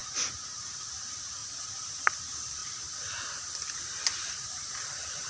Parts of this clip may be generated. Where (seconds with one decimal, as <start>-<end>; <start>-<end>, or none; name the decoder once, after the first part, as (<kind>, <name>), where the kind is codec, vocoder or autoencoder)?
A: 0.0-0.8 (vocoder, BigVGAN v2); 1.4-2.0; 2.6-5.3